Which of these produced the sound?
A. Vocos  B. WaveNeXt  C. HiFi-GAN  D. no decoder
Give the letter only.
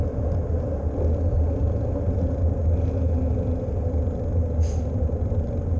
D